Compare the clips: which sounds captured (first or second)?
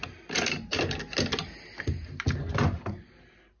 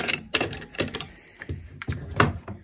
first